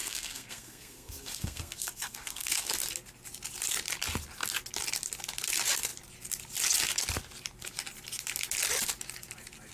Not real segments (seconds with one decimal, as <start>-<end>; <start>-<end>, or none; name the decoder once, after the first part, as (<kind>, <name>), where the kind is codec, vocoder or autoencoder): 0.0-2.7 (codec, SNAC)